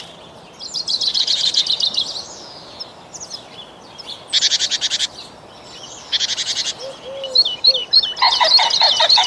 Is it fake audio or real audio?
real